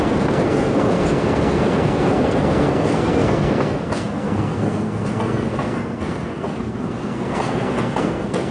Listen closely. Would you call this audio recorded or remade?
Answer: remade